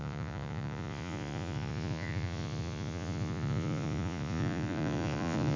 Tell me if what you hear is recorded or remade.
remade